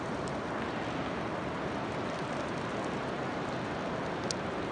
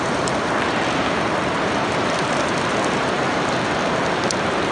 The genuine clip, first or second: first